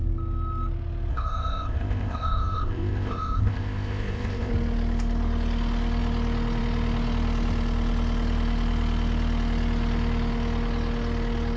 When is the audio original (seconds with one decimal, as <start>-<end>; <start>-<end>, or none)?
0.0-1.1; 4.5-11.6